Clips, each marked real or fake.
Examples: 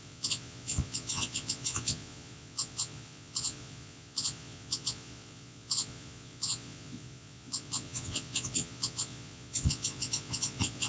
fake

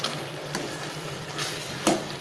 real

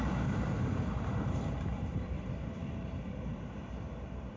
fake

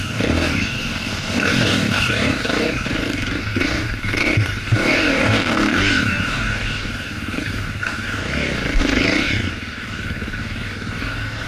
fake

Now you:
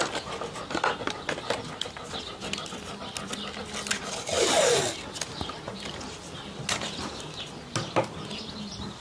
real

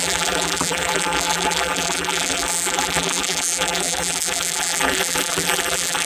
fake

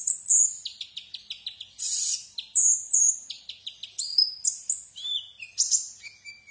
real